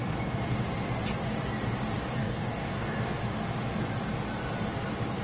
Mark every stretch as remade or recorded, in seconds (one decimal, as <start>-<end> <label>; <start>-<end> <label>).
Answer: 0.0-2.2 recorded; 2.2-3.2 remade; 3.2-5.2 recorded